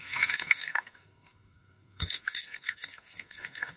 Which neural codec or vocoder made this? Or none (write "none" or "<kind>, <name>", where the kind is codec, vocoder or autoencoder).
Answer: codec, SNAC